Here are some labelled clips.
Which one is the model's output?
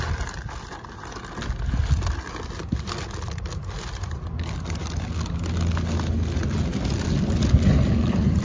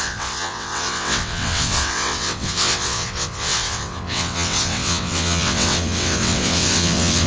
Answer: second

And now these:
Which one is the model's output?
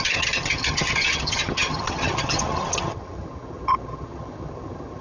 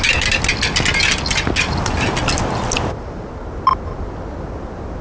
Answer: first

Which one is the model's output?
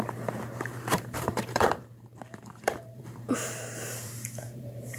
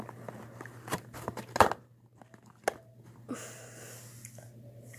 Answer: first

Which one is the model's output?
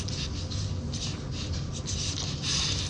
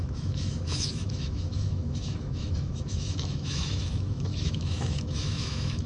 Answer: second